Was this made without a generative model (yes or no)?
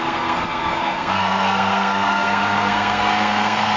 no